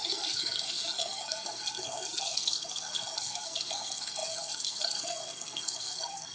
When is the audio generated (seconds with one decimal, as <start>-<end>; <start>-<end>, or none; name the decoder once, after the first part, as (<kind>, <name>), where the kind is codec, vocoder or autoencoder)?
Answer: 0.0-6.3 (codec, SNAC)